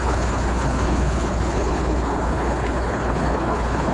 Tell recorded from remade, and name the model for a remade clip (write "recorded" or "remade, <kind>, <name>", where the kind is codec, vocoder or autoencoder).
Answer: remade, codec, HILCodec